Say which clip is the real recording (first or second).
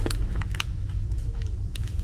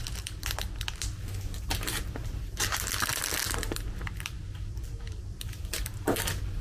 second